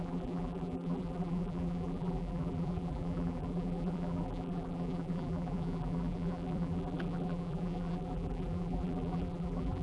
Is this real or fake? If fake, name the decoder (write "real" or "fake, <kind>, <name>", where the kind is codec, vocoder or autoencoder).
fake, vocoder, BigVGAN v2